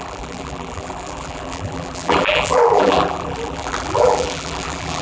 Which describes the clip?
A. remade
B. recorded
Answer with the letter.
A